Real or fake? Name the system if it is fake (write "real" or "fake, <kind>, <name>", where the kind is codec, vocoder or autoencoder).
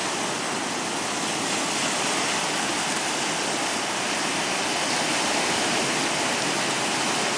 real